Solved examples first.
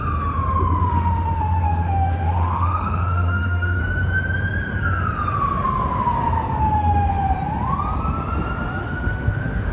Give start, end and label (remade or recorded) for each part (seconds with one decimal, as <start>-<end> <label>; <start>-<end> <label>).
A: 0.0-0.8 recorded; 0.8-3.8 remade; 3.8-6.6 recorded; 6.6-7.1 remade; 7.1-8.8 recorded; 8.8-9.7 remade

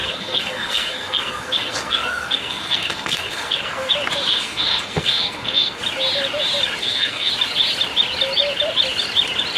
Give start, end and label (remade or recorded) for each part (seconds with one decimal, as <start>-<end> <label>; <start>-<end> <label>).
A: 0.0-3.9 remade; 3.9-4.3 recorded; 4.3-5.8 remade; 5.8-6.8 recorded; 6.8-7.3 remade; 7.3-9.6 recorded

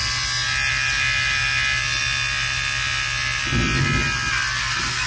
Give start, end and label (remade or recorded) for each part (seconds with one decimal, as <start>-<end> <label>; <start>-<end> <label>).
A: 0.0-5.1 recorded

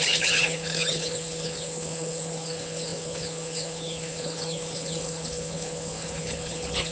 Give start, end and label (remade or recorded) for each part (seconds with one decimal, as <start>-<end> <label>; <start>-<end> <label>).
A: 0.0-6.9 remade

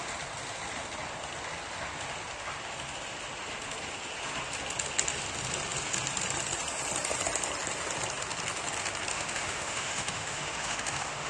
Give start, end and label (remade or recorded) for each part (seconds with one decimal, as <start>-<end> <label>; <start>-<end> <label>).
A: 0.0-9.1 recorded; 9.1-11.3 remade

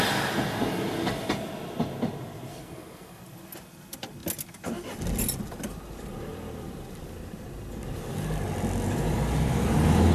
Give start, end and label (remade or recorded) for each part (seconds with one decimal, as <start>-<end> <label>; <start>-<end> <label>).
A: 0.0-2.5 recorded; 2.5-3.2 remade; 3.2-10.1 recorded

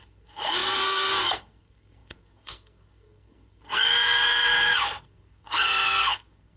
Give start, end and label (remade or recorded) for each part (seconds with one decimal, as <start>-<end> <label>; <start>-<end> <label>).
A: 0.0-6.6 remade

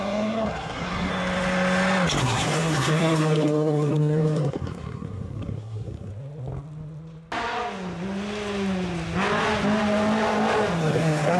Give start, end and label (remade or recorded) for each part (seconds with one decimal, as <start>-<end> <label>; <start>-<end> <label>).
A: 0.0-1.1 remade; 1.1-2.2 recorded; 2.2-6.1 remade; 6.1-10.8 recorded; 10.8-11.4 remade